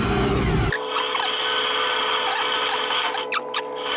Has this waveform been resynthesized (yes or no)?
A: no